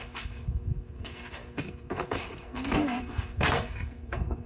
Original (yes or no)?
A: no